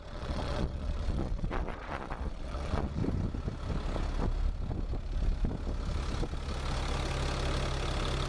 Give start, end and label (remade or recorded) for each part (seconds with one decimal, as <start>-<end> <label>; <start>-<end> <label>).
0.0-3.0 remade; 3.0-8.3 recorded